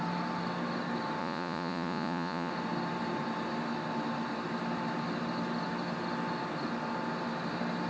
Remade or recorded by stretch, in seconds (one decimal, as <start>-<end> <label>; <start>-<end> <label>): 0.0-1.2 recorded; 1.2-2.5 remade; 2.5-7.9 recorded